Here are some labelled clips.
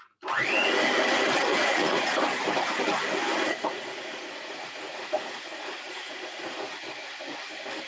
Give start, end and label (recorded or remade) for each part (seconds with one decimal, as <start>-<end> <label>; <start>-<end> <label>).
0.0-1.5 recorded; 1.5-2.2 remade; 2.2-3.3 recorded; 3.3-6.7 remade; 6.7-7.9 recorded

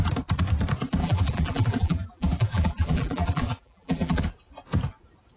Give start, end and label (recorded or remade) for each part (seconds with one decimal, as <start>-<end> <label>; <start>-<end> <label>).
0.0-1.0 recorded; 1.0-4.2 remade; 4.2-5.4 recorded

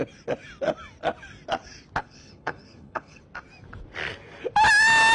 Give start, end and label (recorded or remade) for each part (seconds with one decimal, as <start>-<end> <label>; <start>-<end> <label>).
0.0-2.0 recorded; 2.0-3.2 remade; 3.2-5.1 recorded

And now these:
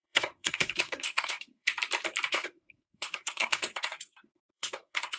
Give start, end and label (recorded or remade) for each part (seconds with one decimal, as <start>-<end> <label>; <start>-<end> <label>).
0.0-1.7 remade; 1.7-2.3 recorded; 2.3-5.2 remade

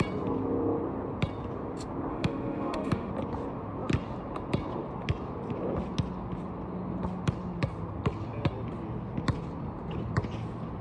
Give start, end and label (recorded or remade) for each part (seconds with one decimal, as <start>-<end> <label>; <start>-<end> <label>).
0.0-2.1 recorded; 2.1-3.1 remade; 3.1-10.8 recorded

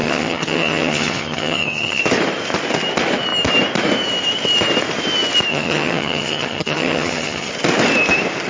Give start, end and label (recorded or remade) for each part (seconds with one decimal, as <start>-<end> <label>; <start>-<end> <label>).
0.0-2.0 remade; 2.0-5.5 recorded; 5.5-7.5 remade; 7.5-8.5 recorded

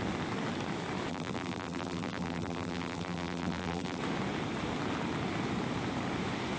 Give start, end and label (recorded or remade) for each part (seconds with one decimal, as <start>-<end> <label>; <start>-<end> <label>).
0.0-1.1 recorded; 1.1-4.0 remade; 4.0-6.6 recorded

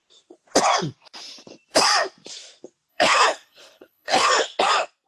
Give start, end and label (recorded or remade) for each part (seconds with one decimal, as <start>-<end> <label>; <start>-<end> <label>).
0.0-2.9 recorded; 2.9-4.3 remade; 4.3-5.1 recorded